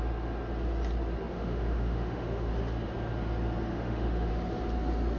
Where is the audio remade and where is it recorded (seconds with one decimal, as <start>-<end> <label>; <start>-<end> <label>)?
0.0-1.3 recorded; 1.3-2.5 remade; 2.5-3.7 recorded; 3.7-4.3 remade; 4.3-5.2 recorded